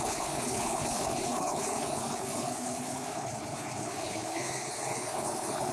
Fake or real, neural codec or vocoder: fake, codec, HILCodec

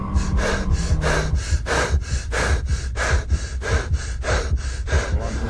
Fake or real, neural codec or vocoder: real